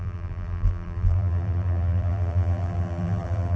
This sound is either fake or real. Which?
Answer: fake